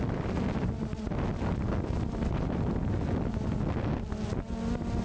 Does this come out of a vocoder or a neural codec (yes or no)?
no